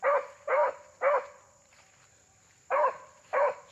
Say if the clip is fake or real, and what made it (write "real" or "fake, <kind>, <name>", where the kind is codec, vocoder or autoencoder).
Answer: fake, vocoder, BigVGAN v2